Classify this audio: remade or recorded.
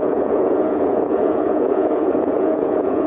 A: remade